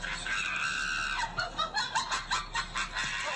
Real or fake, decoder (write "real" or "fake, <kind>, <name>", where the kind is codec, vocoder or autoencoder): real